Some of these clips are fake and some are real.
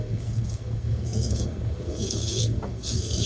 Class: fake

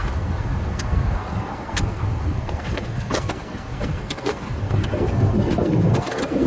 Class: fake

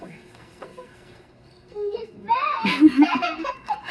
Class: fake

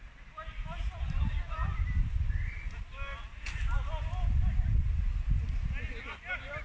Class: real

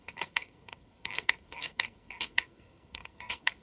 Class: fake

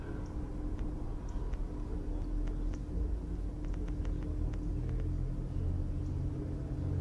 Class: real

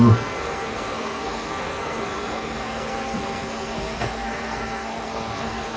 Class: fake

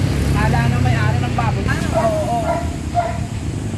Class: real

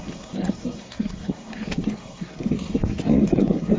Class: fake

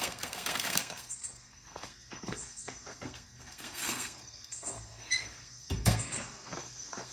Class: fake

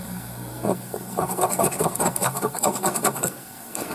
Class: fake